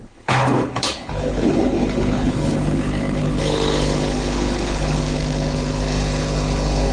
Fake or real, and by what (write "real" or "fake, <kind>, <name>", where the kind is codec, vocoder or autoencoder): fake, codec, HILCodec